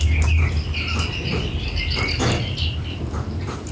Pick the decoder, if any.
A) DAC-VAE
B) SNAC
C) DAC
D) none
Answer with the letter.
D